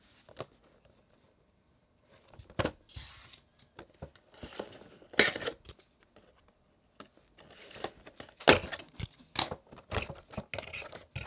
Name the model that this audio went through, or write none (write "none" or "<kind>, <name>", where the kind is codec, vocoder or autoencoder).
none